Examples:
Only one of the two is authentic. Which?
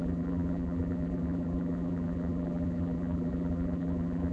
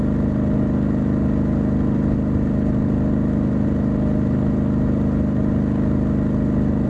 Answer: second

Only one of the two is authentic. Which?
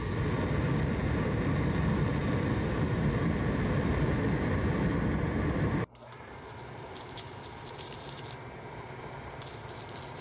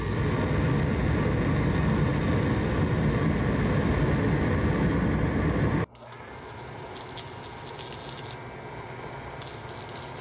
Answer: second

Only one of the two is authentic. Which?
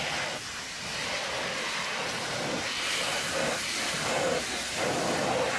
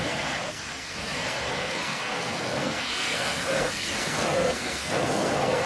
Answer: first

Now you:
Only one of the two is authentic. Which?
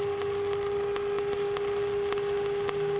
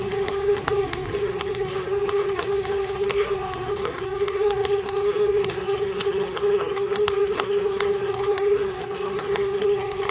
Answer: first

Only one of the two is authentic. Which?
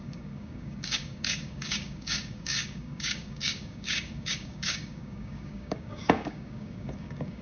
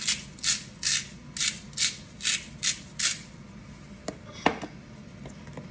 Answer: second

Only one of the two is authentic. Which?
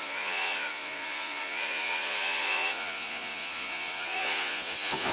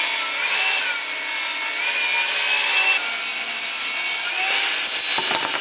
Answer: second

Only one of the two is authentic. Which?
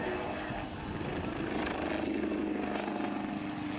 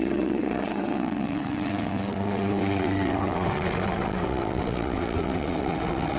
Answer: first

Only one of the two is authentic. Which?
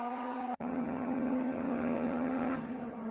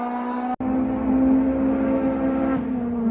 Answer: second